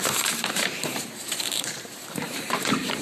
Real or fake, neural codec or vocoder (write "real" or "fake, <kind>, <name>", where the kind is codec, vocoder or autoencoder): fake, vocoder, BigVGAN v2